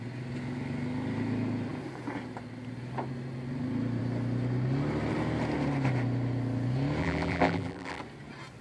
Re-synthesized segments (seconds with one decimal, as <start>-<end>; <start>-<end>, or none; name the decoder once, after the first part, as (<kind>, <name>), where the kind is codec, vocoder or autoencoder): 7.0-8.0 (vocoder, BigVGAN v2)